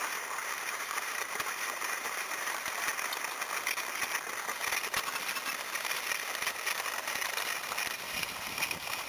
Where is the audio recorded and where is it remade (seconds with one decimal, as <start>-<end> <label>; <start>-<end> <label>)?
0.0-2.9 remade; 2.9-8.1 recorded; 8.1-9.1 remade